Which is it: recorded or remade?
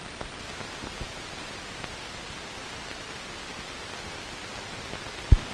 recorded